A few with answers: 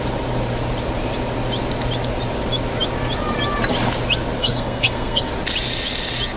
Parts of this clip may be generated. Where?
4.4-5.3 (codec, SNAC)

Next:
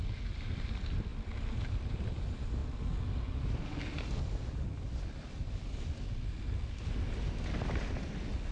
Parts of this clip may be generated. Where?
none

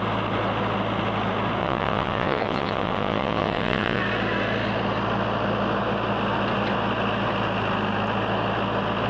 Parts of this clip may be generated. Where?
1.6-4.0 (vocoder, WaveNeXt)

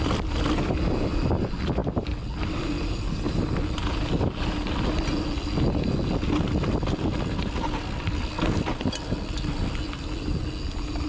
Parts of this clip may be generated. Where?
none

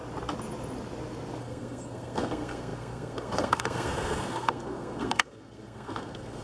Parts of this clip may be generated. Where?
1.4-6.4 (codec, SNAC)

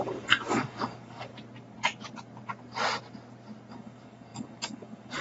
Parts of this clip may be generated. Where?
0.0-1.3 (codec, DAC); 3.7-5.2

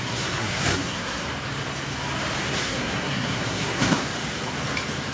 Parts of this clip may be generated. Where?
0.0-1.2 (codec, SNAC); 2.4-4.1

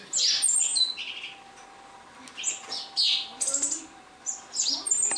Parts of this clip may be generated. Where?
none